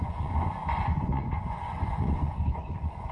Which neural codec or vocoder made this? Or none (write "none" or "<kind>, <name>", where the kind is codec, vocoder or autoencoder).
vocoder, Vocos